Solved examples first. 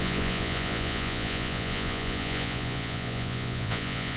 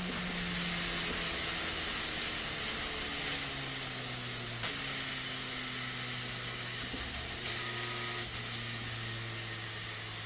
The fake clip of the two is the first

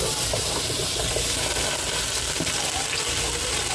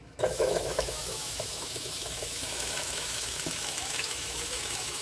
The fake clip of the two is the second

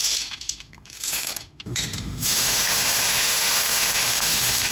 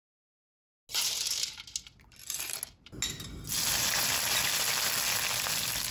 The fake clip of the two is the first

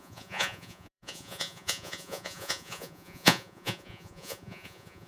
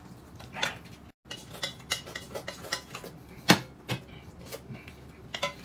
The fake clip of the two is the first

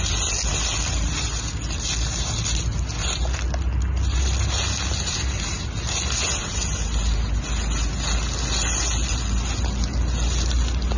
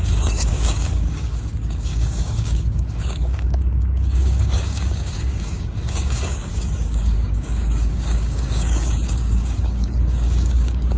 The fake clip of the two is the second